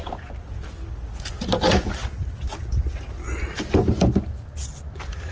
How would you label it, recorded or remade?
recorded